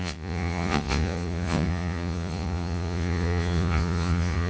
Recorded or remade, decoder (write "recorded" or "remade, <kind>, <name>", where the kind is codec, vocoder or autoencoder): remade, vocoder, Vocos